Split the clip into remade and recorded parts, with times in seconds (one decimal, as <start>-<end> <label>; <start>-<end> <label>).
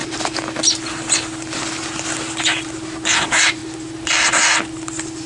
0.0-5.3 recorded